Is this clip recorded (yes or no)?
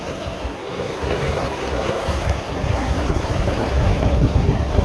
no